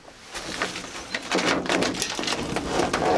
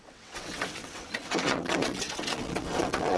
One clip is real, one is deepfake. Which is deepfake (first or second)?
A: second